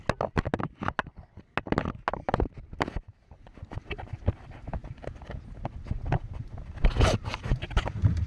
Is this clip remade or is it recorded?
recorded